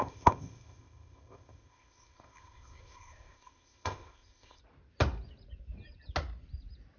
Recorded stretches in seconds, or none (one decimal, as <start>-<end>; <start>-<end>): 4.6-7.0